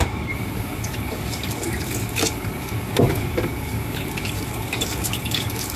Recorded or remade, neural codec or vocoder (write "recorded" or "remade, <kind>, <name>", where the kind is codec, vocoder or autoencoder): remade, codec, DAC